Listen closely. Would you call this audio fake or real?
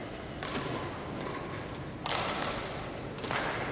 real